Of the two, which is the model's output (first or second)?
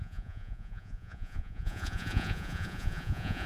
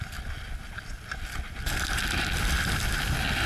first